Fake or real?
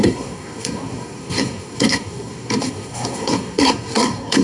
fake